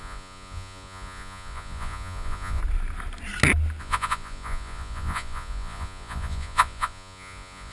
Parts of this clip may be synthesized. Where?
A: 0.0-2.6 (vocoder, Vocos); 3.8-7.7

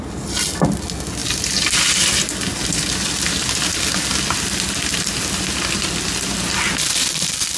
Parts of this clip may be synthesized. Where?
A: none

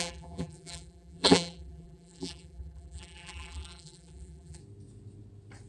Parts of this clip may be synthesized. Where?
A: 0.0-4.6 (vocoder, BigVGAN v2)

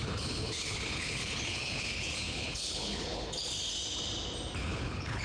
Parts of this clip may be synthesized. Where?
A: 0.0-3.5 (codec, HILCodec); 4.6-5.2